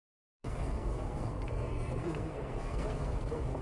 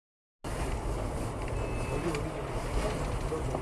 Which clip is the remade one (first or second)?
first